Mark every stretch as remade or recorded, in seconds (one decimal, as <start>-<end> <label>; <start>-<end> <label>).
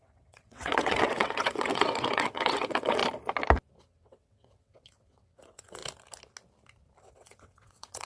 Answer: 0.0-3.0 remade; 3.0-3.8 recorded; 3.8-5.8 remade; 5.8-7.0 recorded; 7.0-8.1 remade